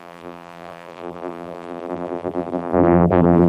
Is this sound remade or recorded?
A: remade